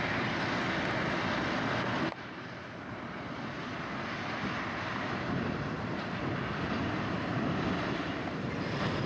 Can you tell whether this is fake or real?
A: real